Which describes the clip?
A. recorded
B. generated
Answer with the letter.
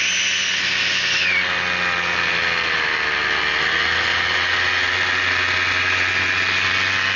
A